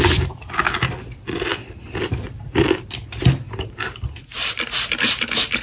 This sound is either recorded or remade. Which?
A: recorded